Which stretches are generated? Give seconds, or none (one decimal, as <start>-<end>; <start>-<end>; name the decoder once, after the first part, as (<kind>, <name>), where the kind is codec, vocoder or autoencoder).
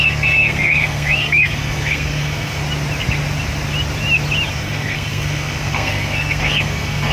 0.0-2.6 (codec, SNAC); 4.5-7.1